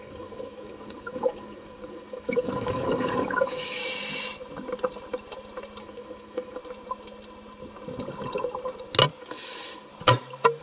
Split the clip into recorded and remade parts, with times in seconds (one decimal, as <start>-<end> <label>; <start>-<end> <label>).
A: 0.0-3.8 remade; 3.8-5.8 recorded; 5.8-6.6 remade; 6.6-9.2 recorded; 9.2-9.9 remade; 9.9-10.6 recorded